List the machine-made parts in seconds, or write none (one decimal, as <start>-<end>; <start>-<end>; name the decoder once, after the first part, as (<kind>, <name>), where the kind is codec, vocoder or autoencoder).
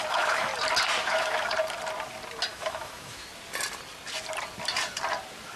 0.0-0.5 (autoencoder, DAC-VAE); 1.0-1.5; 2.5-3.3